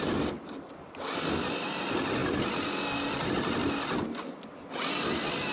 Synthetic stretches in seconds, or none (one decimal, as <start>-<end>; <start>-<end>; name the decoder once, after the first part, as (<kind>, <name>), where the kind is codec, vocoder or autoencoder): none